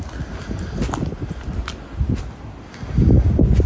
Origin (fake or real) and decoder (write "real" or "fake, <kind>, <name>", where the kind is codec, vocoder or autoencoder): real